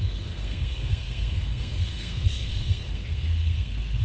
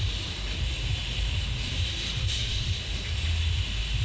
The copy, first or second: first